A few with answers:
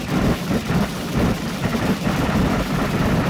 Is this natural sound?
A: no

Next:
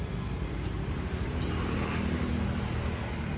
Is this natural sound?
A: yes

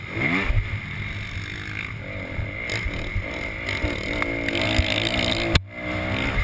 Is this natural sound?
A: yes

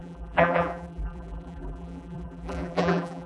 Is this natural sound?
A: no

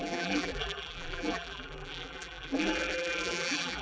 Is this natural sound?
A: no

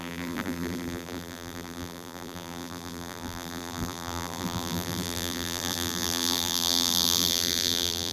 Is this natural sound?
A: no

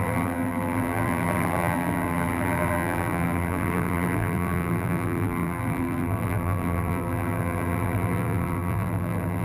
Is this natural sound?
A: no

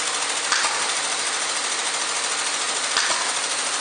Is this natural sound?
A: no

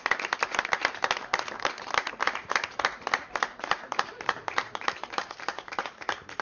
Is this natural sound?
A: no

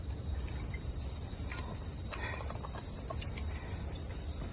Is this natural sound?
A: yes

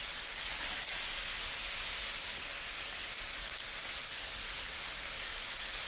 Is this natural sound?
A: yes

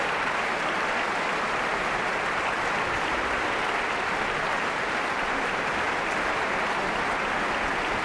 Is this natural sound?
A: yes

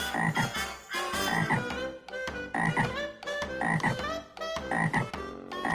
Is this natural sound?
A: yes